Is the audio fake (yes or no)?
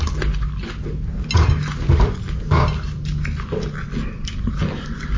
no